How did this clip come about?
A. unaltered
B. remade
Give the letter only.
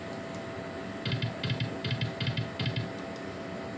A